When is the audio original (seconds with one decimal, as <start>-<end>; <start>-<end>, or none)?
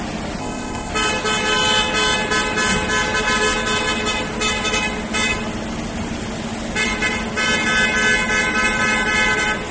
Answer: 0.0-0.4; 0.9-9.7